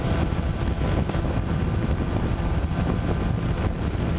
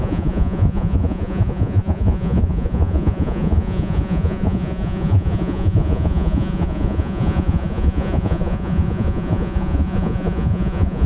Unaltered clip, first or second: first